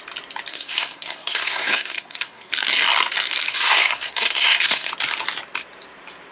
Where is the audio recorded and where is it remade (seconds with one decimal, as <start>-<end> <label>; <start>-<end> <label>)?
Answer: 0.0-0.5 recorded; 0.5-2.5 remade; 2.5-3.5 recorded; 3.5-4.9 remade; 4.9-6.3 recorded